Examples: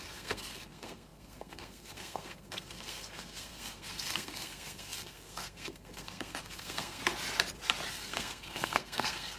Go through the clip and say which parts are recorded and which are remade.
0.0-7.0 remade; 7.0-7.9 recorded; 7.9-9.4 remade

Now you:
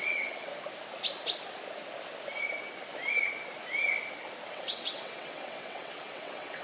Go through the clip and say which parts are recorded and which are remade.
0.0-0.5 remade; 0.5-4.5 recorded; 4.5-6.6 remade

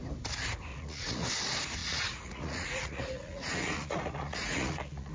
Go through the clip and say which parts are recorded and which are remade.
0.0-0.7 recorded; 0.7-1.3 remade; 1.3-1.8 recorded; 1.8-5.1 remade